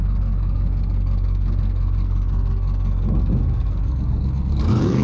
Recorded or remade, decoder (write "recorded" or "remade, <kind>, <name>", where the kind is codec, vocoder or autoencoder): remade, codec, SNAC